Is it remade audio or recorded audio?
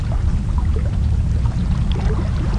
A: remade